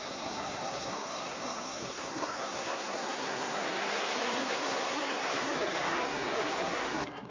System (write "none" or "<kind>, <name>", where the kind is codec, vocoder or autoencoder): codec, SNAC